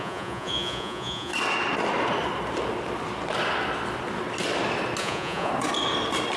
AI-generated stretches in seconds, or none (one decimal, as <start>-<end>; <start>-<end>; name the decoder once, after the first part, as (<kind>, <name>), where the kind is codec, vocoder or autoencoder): 0.0-1.3 (vocoder, Vocos); 5.0-5.5